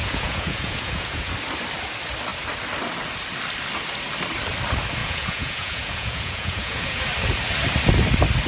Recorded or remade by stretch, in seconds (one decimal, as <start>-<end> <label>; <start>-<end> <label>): 0.0-1.3 remade; 1.3-5.0 recorded; 5.0-7.0 remade; 7.0-8.5 recorded